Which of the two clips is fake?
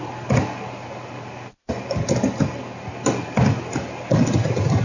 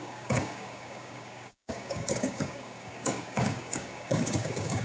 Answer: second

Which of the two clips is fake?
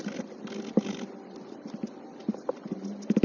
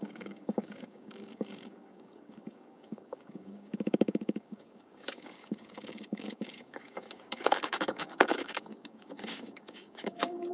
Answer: second